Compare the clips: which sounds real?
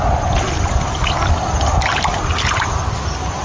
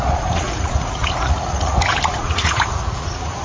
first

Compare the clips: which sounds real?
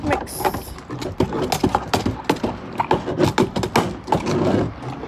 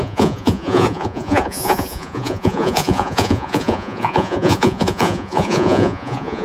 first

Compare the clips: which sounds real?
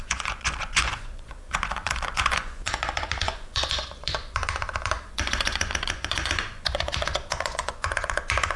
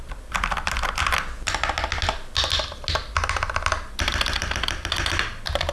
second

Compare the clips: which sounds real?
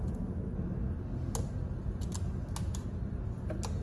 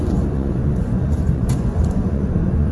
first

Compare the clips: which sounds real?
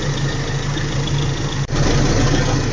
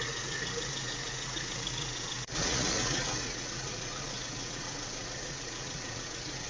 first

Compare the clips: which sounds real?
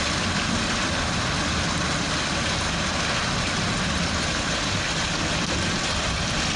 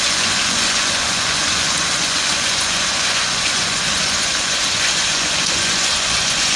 first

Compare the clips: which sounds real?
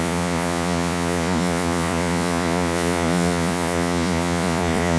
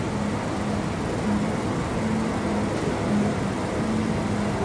second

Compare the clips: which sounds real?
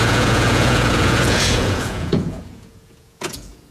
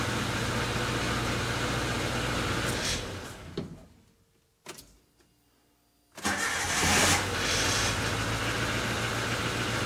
second